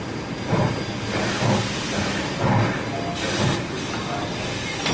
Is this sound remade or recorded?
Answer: recorded